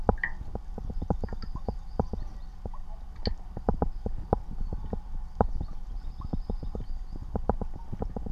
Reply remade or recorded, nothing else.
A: recorded